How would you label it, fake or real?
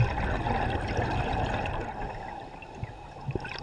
real